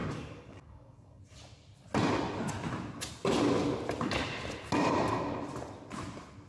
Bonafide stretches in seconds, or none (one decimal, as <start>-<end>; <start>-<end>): 1.2-6.5